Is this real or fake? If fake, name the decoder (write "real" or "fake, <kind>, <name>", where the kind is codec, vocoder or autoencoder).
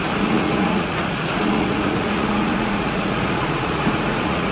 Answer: fake, vocoder, Vocos